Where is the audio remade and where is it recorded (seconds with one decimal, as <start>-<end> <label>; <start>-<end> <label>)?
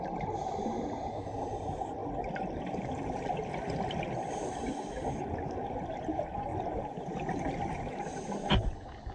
0.0-6.5 recorded; 6.5-7.3 remade; 7.3-9.1 recorded